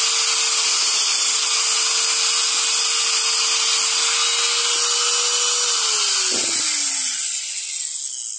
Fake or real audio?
real